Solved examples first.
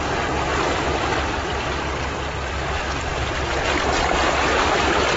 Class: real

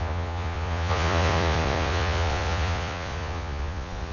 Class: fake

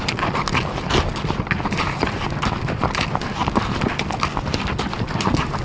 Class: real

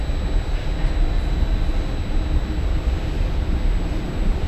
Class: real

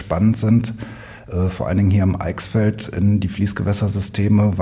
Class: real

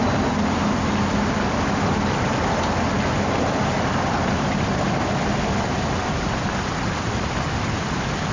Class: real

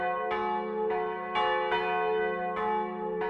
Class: real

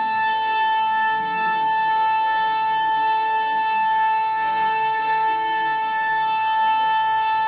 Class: fake